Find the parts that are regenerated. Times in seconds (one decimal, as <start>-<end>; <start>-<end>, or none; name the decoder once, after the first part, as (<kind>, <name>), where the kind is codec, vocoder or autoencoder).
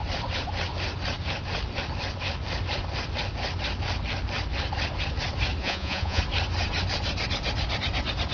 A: 5.6-6.2 (vocoder, Vocos)